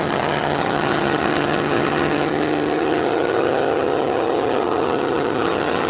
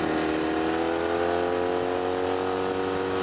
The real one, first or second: second